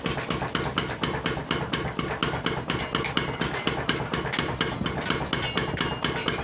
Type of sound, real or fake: real